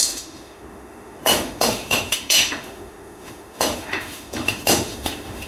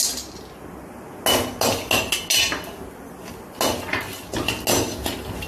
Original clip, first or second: second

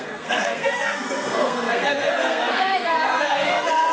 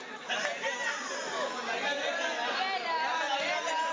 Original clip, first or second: second